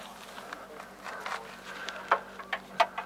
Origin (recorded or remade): recorded